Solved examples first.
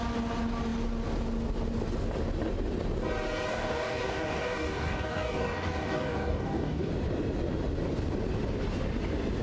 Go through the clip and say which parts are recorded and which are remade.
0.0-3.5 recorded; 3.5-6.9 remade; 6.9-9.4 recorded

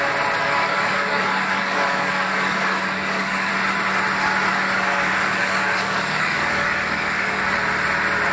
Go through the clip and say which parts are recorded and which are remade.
0.0-0.4 recorded; 0.4-3.5 remade; 3.5-4.5 recorded; 4.5-7.4 remade; 7.4-8.3 recorded